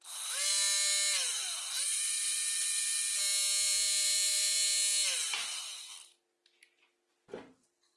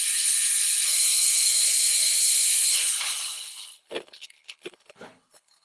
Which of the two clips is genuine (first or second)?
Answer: first